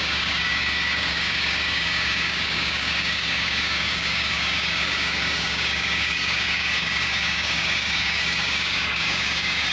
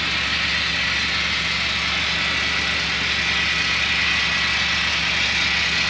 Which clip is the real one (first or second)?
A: second